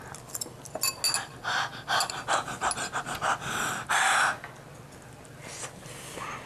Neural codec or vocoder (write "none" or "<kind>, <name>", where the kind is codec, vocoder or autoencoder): none